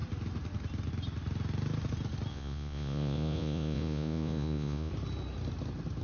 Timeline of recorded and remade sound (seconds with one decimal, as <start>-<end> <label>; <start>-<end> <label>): 0.0-2.3 recorded; 2.3-4.9 remade; 4.9-6.0 recorded